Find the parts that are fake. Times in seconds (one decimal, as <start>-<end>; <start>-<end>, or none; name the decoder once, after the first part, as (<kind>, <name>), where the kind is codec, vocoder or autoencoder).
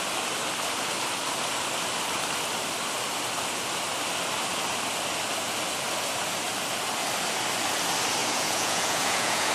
8.2-9.5 (vocoder, Vocos)